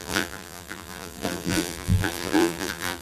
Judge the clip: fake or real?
fake